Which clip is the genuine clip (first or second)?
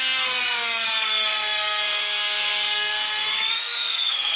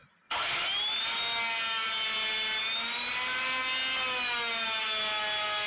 second